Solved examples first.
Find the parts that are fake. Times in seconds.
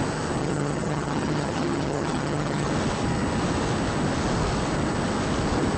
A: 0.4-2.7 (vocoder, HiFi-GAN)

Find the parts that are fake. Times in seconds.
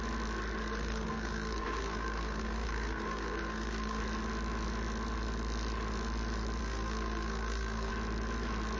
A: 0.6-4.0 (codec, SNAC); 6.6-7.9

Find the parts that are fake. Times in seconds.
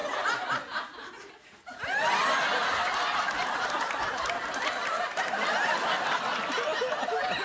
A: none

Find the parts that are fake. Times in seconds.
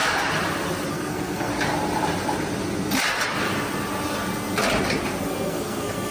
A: 0.9-1.5 (codec, SNAC); 5.2-6.1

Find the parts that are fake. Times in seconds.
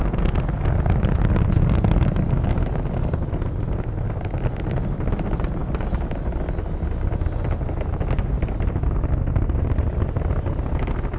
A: none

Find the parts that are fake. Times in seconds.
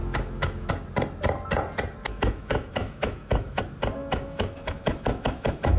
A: 0.0-0.7 (autoencoder, DAC-VAE); 2.1-3.6; 4.0-5.8